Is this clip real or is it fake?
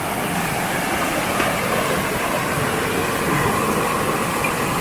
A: real